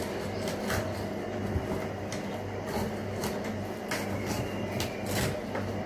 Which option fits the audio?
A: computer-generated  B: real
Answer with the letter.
B